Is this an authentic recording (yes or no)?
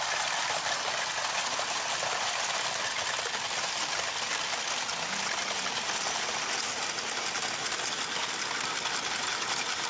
yes